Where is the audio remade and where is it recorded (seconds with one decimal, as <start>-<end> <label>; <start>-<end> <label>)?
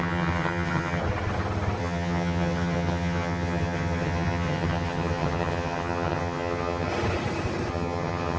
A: 0.0-1.0 remade; 1.0-1.8 recorded; 1.8-6.9 remade; 6.9-7.7 recorded; 7.7-8.4 remade